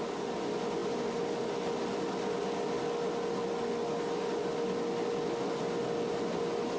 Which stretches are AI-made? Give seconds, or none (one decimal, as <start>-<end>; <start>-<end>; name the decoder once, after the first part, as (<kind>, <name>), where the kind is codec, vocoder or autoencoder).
none